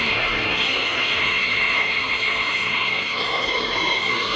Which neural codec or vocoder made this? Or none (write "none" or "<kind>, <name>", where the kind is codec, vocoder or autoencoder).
codec, SNAC